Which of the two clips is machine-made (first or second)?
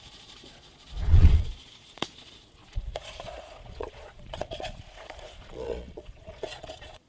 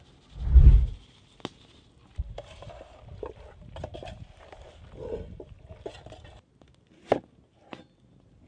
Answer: first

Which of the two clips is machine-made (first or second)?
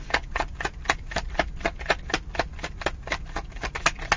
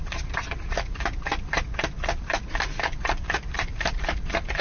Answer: second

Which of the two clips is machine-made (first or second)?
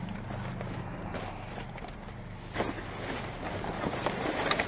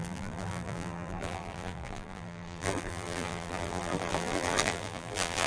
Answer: second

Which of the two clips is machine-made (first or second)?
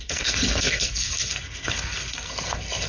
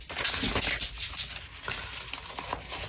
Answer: first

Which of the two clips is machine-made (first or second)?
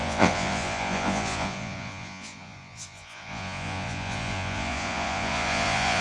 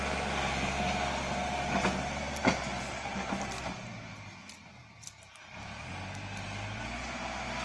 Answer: first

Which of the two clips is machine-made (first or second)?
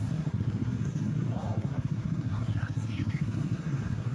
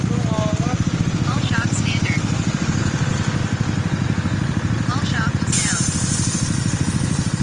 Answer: first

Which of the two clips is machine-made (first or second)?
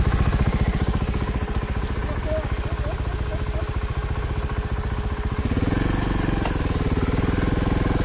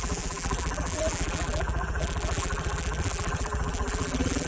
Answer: second